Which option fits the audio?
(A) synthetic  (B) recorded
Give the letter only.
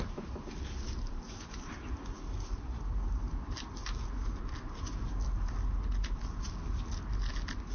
B